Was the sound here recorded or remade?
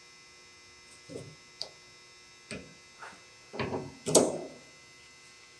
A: recorded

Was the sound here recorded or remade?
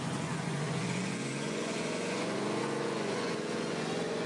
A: remade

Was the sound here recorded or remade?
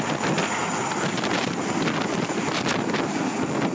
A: recorded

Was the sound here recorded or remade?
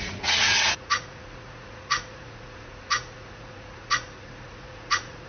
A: remade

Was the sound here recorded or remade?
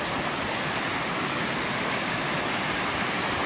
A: recorded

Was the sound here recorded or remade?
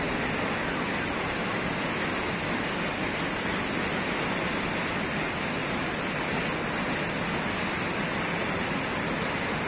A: recorded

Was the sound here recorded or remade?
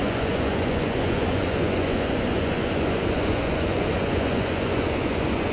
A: remade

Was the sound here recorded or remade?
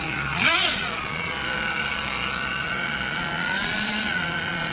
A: remade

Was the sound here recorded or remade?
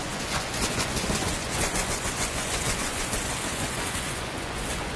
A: remade